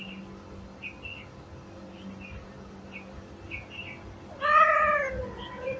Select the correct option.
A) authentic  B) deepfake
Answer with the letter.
A